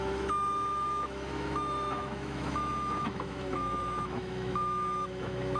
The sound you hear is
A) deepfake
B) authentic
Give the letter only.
A